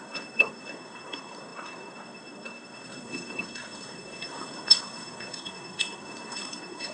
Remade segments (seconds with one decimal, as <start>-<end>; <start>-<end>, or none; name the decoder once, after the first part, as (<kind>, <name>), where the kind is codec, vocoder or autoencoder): 0.0-6.9 (codec, SNAC)